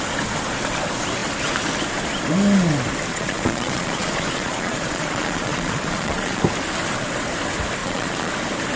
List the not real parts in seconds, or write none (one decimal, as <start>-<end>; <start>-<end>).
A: 3.1-6.4; 7.8-8.3